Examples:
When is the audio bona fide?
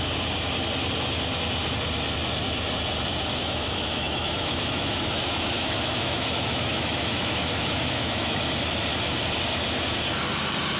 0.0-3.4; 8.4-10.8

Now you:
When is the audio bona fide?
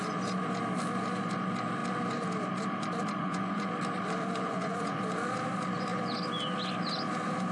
0.0-3.2; 3.7-4.4; 5.0-7.5